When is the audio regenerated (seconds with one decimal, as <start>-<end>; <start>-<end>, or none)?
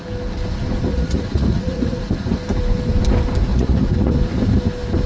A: 0.9-2.1; 3.5-4.2